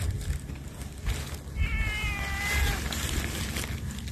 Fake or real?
real